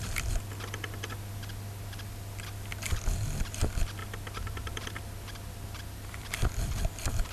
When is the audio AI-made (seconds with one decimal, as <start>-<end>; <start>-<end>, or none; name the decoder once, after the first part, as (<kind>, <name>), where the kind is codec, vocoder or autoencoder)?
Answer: none